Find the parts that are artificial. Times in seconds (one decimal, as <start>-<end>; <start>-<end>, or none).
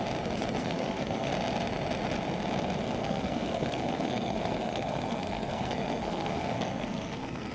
0.6-1.3; 3.0-7.5